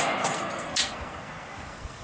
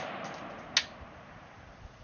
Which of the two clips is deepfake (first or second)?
first